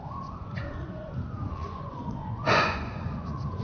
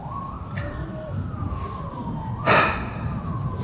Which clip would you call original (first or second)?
second